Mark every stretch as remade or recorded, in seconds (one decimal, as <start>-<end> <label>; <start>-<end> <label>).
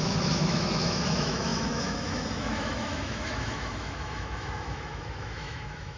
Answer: 0.0-6.0 remade